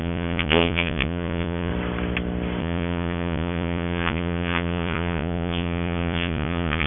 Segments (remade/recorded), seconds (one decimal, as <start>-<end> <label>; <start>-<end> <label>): 0.0-1.7 remade; 1.7-2.6 recorded; 2.6-6.9 remade